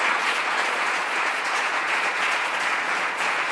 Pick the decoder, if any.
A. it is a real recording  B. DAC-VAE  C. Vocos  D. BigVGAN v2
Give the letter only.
C